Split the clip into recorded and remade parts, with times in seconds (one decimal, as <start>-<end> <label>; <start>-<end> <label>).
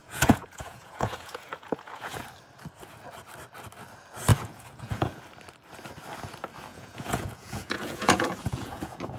0.0-2.2 remade; 2.2-4.3 recorded; 4.3-5.2 remade; 5.2-6.7 recorded; 6.7-9.2 remade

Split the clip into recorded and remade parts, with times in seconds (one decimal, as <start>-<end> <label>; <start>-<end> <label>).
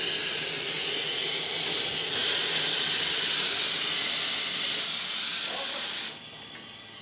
0.0-7.0 recorded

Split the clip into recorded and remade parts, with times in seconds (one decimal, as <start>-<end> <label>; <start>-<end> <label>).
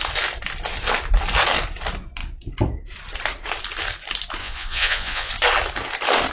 0.0-4.4 recorded; 4.4-5.3 remade; 5.3-6.3 recorded